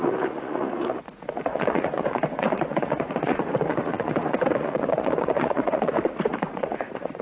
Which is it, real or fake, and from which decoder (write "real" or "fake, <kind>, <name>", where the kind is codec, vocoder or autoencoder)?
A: fake, vocoder, Vocos